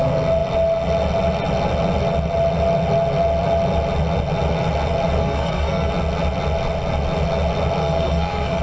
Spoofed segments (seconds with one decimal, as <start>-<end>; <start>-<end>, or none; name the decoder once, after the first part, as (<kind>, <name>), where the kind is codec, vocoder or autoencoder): 5.2-5.9 (codec, SNAC); 7.8-8.6

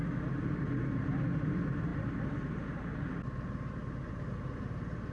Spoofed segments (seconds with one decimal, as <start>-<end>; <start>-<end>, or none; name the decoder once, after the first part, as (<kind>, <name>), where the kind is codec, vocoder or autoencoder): none

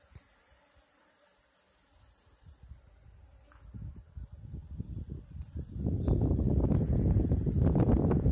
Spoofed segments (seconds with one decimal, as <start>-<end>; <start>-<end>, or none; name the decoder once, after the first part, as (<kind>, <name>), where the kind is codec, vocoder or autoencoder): none

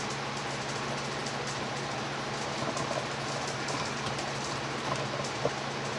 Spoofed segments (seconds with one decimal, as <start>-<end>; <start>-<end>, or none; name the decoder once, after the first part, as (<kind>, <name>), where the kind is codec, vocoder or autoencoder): none

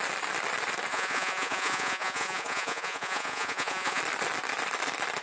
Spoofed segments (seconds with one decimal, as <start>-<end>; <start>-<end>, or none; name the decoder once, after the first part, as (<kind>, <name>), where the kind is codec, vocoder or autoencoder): 0.9-4.0 (vocoder, Vocos)